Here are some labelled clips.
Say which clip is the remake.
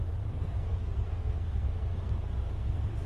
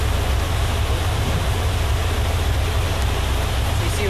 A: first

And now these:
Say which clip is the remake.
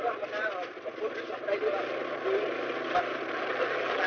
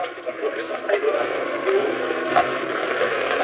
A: second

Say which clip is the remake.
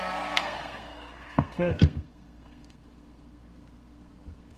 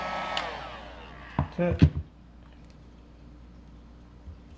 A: first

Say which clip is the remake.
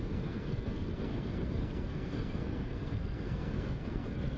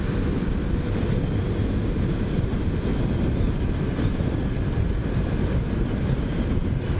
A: first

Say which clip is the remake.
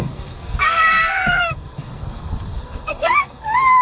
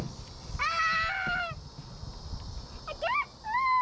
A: first